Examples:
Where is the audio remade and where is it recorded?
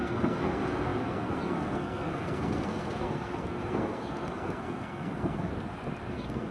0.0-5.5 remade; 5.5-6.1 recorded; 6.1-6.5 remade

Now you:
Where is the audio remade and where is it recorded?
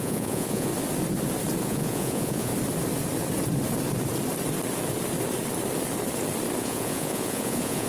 0.0-0.7 remade; 0.7-1.6 recorded; 1.6-2.5 remade; 2.5-6.6 recorded; 6.6-7.9 remade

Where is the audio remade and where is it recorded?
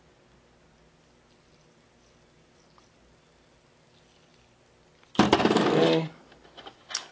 0.0-7.1 recorded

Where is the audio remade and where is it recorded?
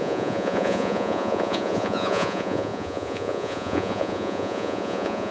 0.0-5.3 remade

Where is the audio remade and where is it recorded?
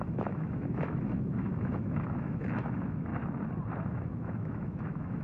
0.0-3.1 remade; 3.1-3.9 recorded; 3.9-5.2 remade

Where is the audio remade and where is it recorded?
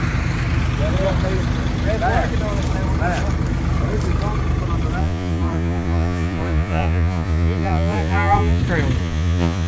0.0-5.0 recorded; 5.0-8.6 remade; 8.6-9.0 recorded; 9.0-9.7 remade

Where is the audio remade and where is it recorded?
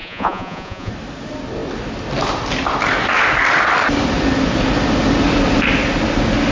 0.0-0.9 remade; 0.9-6.5 recorded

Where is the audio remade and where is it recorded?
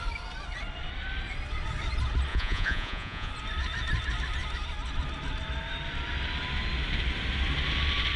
0.0-2.3 recorded; 2.3-3.3 remade; 3.3-8.2 recorded